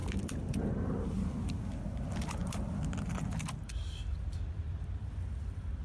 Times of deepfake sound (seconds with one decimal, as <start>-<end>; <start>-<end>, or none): 0.0-0.7; 5.0-5.8